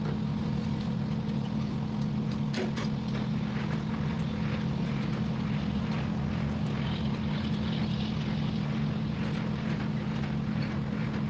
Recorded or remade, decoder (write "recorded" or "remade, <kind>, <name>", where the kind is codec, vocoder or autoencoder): recorded